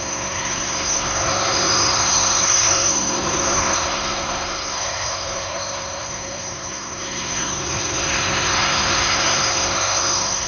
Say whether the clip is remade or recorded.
remade